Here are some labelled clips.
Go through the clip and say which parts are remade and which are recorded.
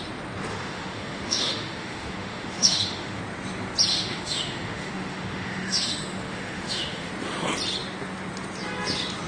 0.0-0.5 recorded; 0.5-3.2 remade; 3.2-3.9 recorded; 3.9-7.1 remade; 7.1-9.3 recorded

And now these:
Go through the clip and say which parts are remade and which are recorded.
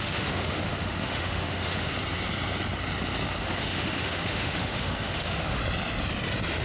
0.0-1.9 remade; 1.9-3.4 recorded; 3.4-5.6 remade; 5.6-6.6 recorded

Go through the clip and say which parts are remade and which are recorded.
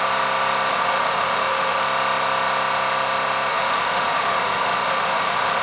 0.0-0.7 recorded; 0.7-1.8 remade; 1.8-3.5 recorded; 3.5-5.6 remade